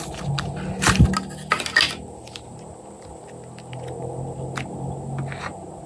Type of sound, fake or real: real